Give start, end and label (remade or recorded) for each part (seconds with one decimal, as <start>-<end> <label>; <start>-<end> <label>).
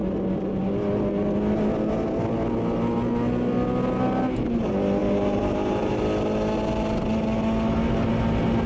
0.0-5.0 recorded; 5.0-5.9 remade; 5.9-8.7 recorded